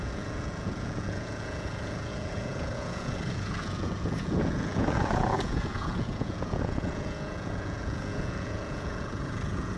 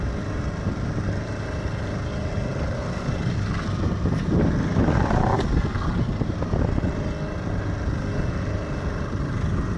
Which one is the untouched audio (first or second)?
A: second